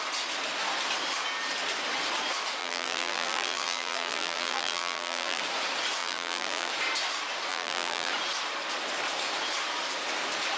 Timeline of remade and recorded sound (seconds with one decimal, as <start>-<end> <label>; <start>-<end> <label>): 0.0-2.6 recorded; 2.6-5.4 remade; 5.4-6.0 recorded; 6.0-6.7 remade; 6.7-7.5 recorded; 7.5-8.1 remade; 8.1-10.6 recorded